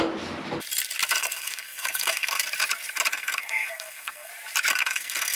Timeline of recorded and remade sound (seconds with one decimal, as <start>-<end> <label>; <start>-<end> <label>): 0.0-1.2 recorded; 1.2-2.4 remade; 2.4-3.1 recorded; 3.1-4.3 remade; 4.3-4.7 recorded; 4.7-5.4 remade

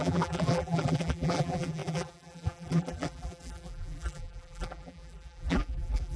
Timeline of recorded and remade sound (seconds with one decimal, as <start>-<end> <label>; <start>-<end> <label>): 0.0-6.2 remade

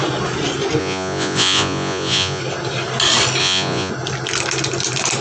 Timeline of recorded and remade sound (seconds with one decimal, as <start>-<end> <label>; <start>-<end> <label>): 0.0-0.8 recorded; 0.8-2.4 remade; 2.4-3.4 recorded; 3.4-3.9 remade; 3.9-5.2 recorded

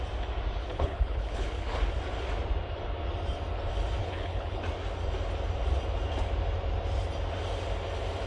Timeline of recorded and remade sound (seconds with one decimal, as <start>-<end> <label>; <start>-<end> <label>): 0.0-0.6 recorded; 0.6-1.8 remade; 1.8-4.0 recorded; 4.0-4.6 remade; 4.6-8.3 recorded

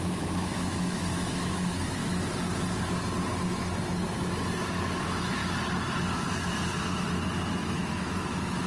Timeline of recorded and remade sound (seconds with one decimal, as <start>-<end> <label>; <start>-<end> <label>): 0.0-2.0 remade; 2.0-5.0 recorded; 5.0-5.4 remade; 5.4-7.6 recorded; 7.6-8.7 remade

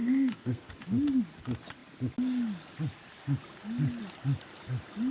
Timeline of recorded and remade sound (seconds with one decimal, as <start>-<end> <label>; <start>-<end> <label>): 0.0-0.7 remade; 0.7-5.1 recorded

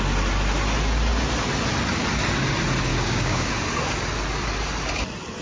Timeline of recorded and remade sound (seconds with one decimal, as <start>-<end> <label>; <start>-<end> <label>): 0.0-2.9 recorded; 2.9-3.5 remade; 3.5-5.4 recorded

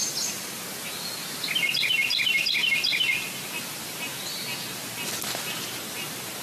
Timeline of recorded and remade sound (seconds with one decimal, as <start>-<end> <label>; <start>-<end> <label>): 0.0-1.6 recorded; 1.6-2.6 remade; 2.6-3.4 recorded; 3.4-4.5 remade; 4.5-5.2 recorded; 5.2-6.4 remade